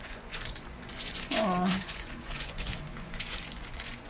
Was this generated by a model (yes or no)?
yes